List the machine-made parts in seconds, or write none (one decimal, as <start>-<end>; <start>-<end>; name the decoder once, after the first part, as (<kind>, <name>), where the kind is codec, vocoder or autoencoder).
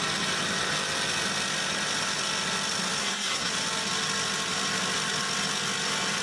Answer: 3.0-3.5 (codec, SNAC)